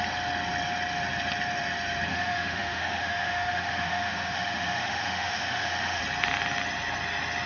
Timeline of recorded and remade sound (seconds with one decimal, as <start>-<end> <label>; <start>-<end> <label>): 0.0-2.1 recorded; 2.1-6.0 remade; 6.0-7.5 recorded